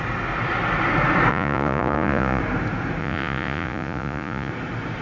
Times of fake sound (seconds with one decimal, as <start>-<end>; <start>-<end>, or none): 1.3-2.4; 3.0-4.5